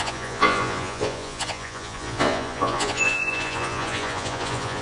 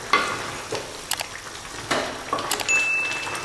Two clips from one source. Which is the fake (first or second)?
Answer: first